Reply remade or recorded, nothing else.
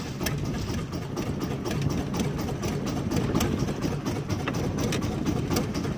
recorded